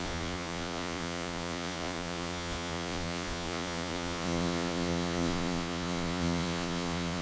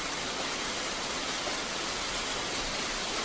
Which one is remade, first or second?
first